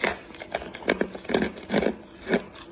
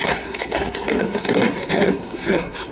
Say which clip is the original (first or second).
first